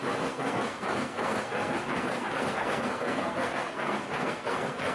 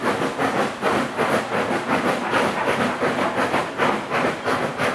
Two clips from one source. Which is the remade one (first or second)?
first